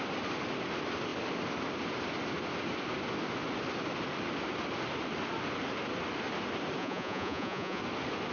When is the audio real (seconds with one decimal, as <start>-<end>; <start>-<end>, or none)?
0.0-6.8; 7.8-8.3

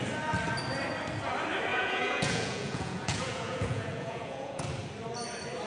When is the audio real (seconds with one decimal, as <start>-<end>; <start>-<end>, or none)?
0.0-1.7; 4.6-5.7

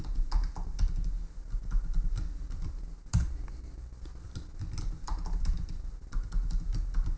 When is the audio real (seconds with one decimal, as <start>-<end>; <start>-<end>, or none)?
0.0-7.2

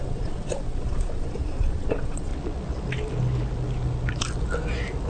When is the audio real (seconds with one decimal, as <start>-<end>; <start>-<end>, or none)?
2.3-5.1

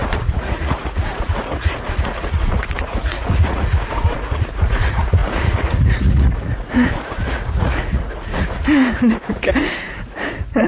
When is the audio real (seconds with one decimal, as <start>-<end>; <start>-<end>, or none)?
none